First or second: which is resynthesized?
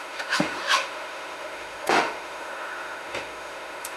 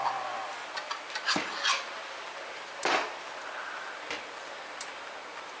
first